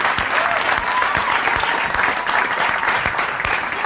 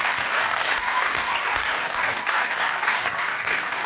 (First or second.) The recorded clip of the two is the first